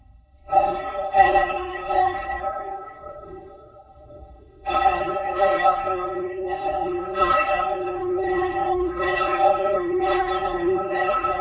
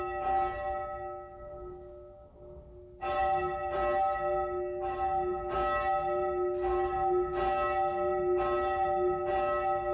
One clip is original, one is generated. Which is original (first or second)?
second